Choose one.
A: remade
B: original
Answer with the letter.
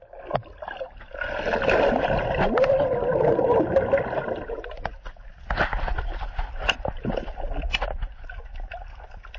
B